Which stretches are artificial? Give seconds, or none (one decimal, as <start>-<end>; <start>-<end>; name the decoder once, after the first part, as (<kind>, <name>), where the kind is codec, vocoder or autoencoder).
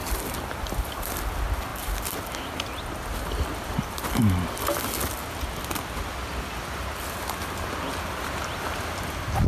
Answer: none